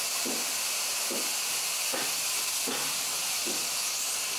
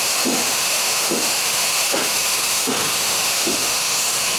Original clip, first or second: first